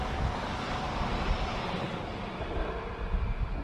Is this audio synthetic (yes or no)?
no